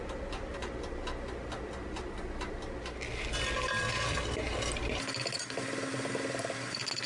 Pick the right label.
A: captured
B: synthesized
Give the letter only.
A